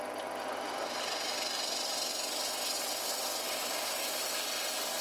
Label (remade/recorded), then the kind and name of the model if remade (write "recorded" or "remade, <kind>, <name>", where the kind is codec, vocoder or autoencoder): recorded